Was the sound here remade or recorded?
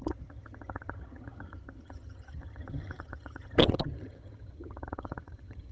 remade